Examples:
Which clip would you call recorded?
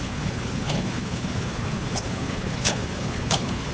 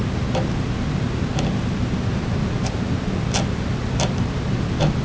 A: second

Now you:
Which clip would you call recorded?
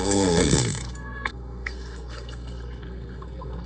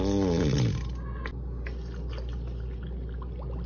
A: second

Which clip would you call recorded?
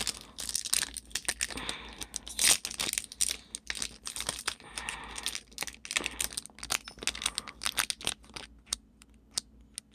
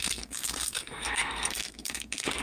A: first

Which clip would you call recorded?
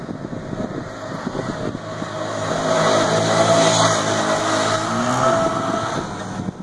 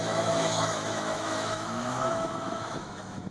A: first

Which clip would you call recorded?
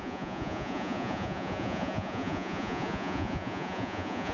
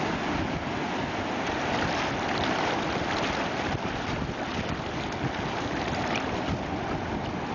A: second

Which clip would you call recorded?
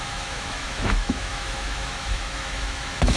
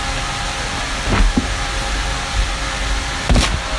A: second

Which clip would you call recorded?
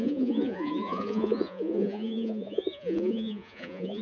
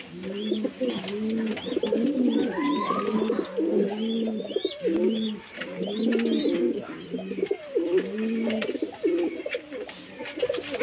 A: second